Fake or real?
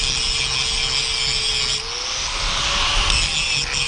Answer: real